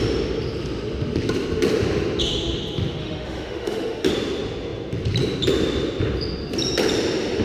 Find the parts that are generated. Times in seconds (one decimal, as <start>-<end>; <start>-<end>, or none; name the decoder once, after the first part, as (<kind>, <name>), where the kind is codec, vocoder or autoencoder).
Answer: 3.0-4.1 (autoencoder, DAC-VAE)